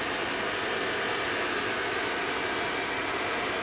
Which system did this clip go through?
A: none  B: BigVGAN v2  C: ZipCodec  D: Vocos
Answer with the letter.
A